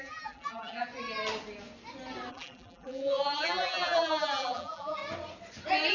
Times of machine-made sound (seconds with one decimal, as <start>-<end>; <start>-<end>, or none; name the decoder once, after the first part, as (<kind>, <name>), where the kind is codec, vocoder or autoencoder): 0.0-0.9 (vocoder, BigVGAN v2); 2.3-5.0